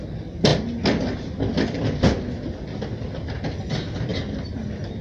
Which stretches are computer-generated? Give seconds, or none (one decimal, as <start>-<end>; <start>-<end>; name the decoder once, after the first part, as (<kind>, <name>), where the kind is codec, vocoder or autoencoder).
none